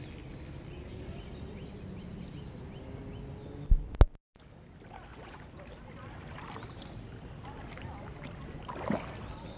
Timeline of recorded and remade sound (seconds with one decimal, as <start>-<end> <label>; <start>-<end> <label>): 0.0-5.1 recorded; 5.1-5.6 remade; 5.6-9.6 recorded